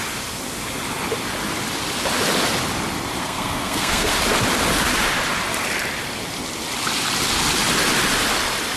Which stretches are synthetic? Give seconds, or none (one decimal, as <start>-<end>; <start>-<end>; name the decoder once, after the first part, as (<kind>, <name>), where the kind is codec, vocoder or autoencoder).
3.2-4.1 (codec, SNAC)